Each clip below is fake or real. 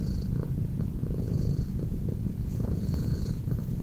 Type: fake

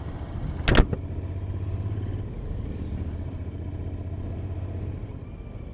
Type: real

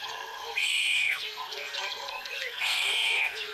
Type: fake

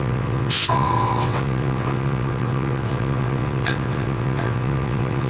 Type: fake